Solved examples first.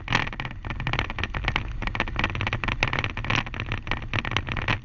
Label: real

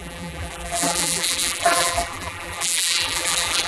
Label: fake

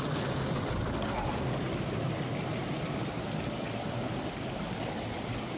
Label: real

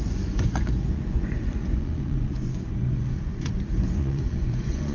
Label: fake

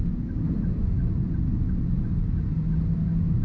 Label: real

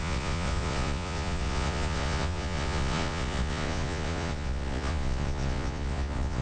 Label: fake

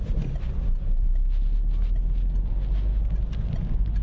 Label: real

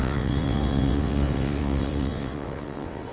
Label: fake